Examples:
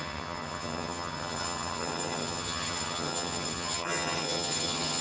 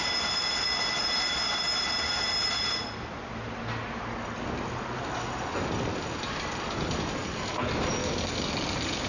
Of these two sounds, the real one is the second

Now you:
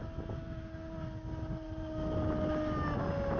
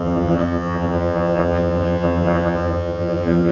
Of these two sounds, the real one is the first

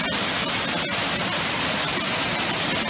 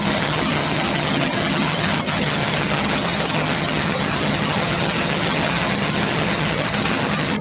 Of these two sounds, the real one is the first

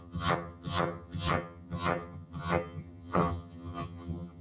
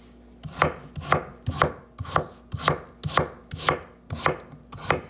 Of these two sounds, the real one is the second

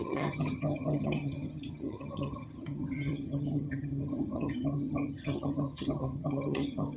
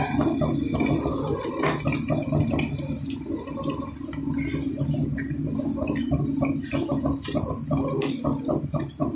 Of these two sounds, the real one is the second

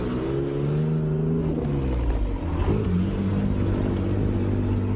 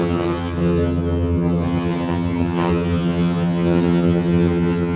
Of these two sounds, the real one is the first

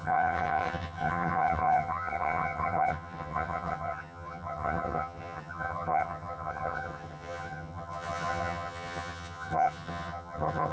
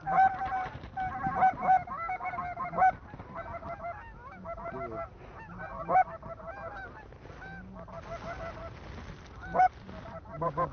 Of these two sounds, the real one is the second